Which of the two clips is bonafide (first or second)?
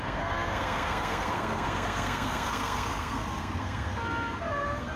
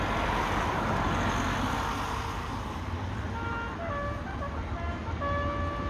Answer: second